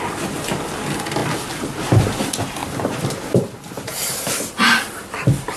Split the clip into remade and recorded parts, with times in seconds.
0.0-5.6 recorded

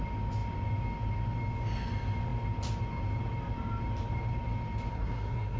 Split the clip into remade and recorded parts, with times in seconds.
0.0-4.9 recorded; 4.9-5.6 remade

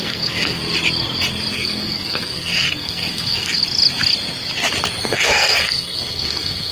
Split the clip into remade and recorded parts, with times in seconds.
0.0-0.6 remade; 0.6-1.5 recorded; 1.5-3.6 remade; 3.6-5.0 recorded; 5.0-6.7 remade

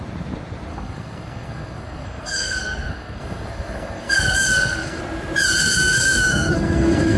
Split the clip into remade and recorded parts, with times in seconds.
0.0-0.7 recorded; 0.7-5.0 remade; 5.0-5.6 recorded; 5.6-7.2 remade